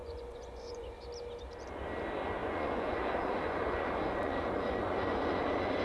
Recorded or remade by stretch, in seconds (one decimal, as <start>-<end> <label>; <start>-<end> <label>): 0.0-1.0 remade; 1.0-2.4 recorded; 2.4-5.8 remade